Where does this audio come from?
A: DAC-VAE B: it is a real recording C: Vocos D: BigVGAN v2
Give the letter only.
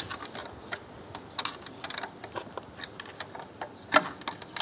B